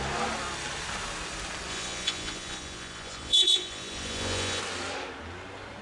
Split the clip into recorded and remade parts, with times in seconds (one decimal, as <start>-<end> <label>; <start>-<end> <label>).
0.0-1.7 recorded; 1.7-4.6 remade; 4.6-5.8 recorded